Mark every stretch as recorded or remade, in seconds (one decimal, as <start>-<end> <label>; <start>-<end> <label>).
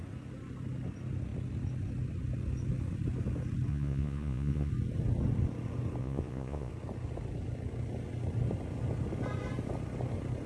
0.0-3.7 recorded; 3.7-4.7 remade; 4.7-6.0 recorded; 6.0-6.7 remade; 6.7-10.5 recorded